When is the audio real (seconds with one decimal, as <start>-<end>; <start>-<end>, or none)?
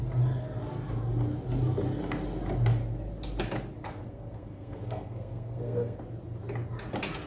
0.0-4.0; 6.0-7.3